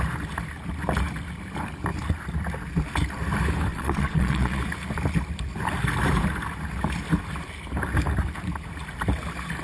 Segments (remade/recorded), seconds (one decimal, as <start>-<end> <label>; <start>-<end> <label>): 0.0-3.7 recorded; 3.7-4.6 remade; 4.6-9.6 recorded

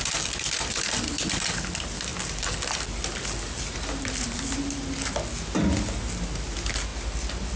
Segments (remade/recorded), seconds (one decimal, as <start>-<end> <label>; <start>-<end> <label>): 0.0-7.6 recorded

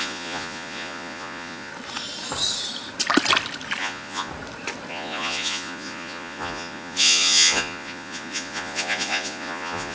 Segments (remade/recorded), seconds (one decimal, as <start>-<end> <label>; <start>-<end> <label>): 0.0-1.7 remade; 1.7-3.8 recorded; 3.8-4.3 remade; 4.3-4.9 recorded; 4.9-9.9 remade

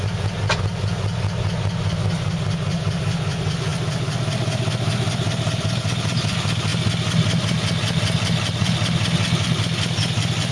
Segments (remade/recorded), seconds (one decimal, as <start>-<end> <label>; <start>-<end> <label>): 0.0-10.5 recorded

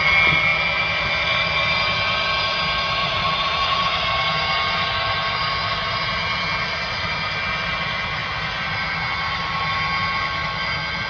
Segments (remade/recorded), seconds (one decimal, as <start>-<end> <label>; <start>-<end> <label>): 0.0-3.0 recorded; 3.0-4.1 remade; 4.1-11.1 recorded

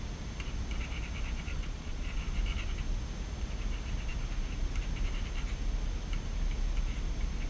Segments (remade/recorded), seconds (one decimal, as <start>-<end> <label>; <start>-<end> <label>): 0.0-1.6 recorded; 1.6-2.2 remade; 2.2-7.5 recorded

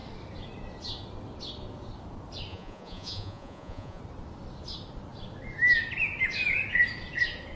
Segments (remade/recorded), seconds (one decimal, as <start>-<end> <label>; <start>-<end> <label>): 0.0-2.5 recorded; 2.5-4.0 remade; 4.0-7.6 recorded